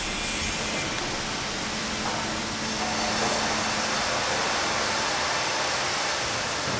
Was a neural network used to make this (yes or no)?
no